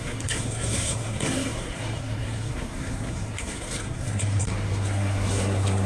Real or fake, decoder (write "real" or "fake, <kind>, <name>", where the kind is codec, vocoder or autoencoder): fake, codec, SNAC